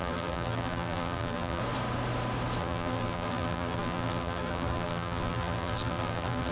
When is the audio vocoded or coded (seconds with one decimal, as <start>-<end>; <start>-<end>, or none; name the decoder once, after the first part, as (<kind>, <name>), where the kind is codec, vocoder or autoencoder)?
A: 0.0-1.6 (vocoder, BigVGAN v2); 2.6-6.5